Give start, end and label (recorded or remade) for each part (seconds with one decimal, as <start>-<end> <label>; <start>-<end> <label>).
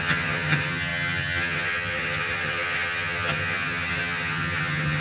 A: 0.0-5.0 remade